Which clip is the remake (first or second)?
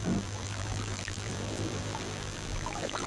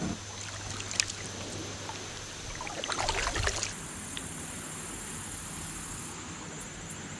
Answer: first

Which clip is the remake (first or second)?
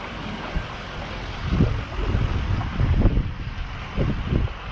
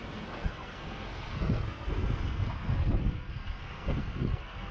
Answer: second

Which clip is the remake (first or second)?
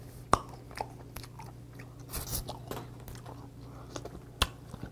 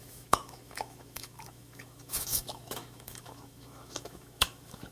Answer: second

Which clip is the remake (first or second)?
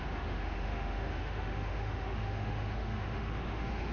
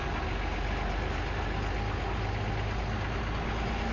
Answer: first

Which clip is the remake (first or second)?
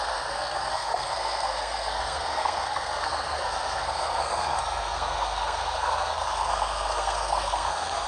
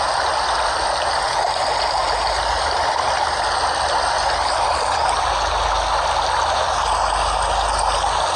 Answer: first